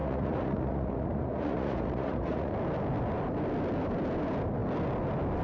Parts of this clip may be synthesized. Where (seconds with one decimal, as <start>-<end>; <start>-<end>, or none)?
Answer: 0.0-2.5